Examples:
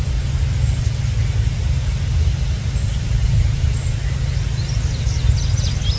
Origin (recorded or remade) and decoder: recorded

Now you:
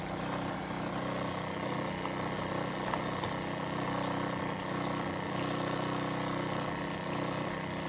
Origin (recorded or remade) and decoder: recorded